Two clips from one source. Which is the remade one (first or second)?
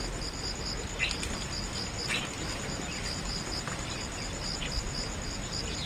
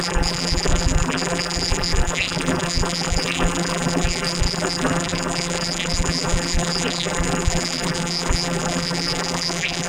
second